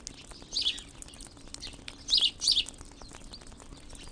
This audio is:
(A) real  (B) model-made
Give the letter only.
A